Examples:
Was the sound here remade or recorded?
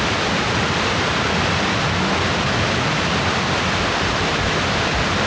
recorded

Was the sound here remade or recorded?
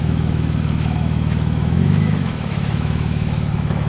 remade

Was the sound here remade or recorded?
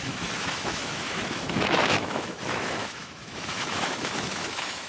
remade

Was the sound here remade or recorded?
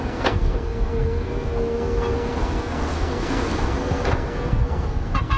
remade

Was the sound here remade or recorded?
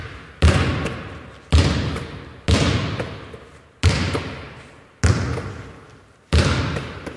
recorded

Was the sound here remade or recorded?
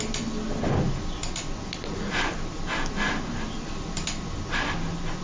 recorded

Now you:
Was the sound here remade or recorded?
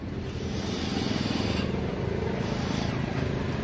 recorded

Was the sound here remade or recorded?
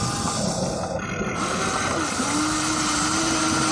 recorded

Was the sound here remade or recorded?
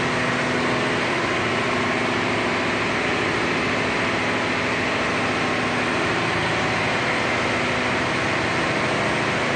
recorded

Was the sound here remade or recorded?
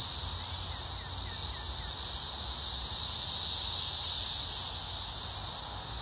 recorded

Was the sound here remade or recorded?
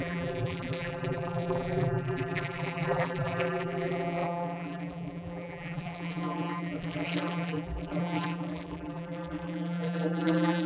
remade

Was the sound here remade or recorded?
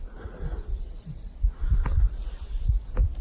recorded